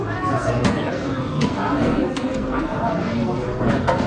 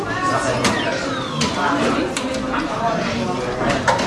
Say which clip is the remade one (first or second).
first